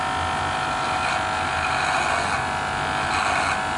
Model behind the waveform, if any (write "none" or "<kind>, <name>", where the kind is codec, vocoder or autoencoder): none